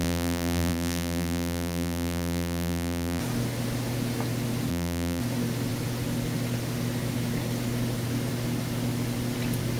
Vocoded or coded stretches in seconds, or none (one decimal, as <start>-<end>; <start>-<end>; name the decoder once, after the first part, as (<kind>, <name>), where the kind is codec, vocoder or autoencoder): 0.0-3.2 (vocoder, BigVGAN v2); 4.7-5.2